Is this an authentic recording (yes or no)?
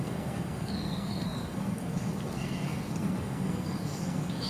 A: no